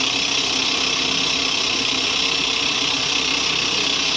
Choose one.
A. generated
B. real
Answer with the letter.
B